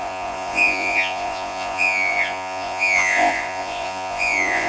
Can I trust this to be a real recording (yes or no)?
no